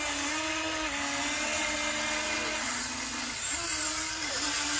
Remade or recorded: recorded